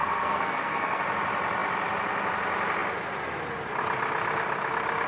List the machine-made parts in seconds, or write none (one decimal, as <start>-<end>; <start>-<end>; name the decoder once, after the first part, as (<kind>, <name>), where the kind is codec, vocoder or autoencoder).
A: 0.0-1.0 (codec, SNAC)